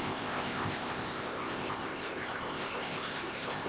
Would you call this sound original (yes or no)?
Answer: no